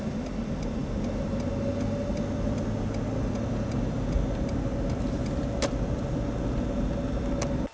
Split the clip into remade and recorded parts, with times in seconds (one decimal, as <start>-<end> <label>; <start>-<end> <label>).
0.0-7.7 recorded